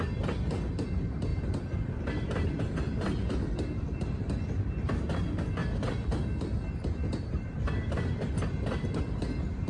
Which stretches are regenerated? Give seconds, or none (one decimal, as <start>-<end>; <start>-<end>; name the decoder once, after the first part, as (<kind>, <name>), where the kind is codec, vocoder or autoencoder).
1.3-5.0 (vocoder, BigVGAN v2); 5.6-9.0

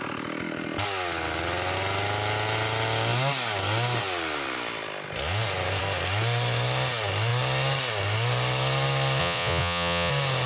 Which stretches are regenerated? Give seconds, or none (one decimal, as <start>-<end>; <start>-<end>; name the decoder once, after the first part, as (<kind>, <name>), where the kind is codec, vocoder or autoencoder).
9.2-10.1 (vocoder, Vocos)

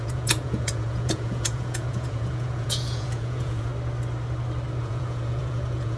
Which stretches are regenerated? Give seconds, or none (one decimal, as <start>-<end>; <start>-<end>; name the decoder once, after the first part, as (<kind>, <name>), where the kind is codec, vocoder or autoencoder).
0.0-3.7 (vocoder, Vocos); 4.8-6.0

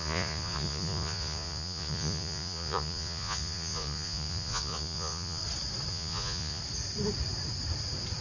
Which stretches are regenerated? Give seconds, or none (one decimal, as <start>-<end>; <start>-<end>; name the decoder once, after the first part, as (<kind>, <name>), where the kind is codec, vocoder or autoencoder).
0.0-5.4 (vocoder, Vocos); 5.9-6.6

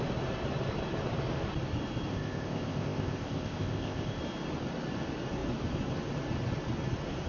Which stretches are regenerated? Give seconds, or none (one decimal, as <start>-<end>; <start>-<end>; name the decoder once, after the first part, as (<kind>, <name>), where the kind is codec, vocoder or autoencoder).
2.1-4.2 (codec, ZipCodec)